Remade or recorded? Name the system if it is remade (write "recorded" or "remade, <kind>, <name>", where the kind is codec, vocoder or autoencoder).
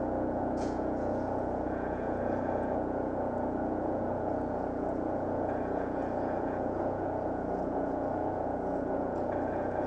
remade, vocoder, Vocos